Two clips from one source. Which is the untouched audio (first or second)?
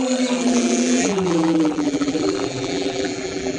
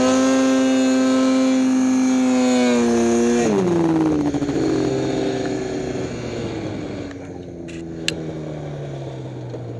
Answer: second